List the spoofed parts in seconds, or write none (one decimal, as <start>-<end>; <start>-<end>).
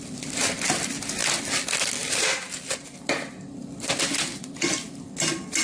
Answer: none